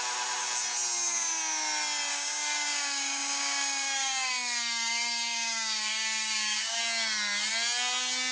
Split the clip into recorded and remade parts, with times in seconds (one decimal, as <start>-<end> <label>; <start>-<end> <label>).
0.0-2.1 recorded; 2.1-6.8 remade; 6.8-8.3 recorded

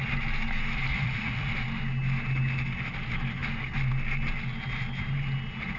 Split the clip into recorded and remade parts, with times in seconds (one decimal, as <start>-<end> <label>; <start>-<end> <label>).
0.0-0.9 recorded; 0.9-1.5 remade; 1.5-5.8 recorded